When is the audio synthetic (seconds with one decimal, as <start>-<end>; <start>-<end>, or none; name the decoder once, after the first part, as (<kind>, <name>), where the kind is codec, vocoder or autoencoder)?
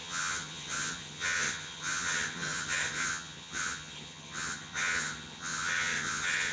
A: 0.0-6.5 (vocoder, HiFi-GAN)